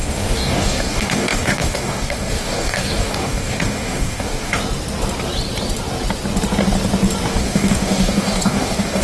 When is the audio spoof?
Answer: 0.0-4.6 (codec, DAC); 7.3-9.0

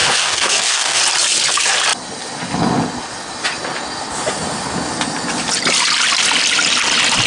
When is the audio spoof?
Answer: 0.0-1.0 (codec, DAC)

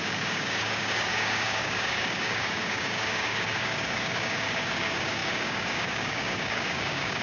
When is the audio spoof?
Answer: 0.0-7.2 (codec, DAC)